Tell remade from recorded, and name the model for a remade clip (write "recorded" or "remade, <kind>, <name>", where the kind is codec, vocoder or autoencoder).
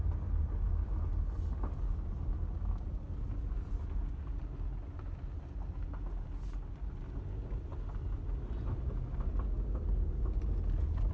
recorded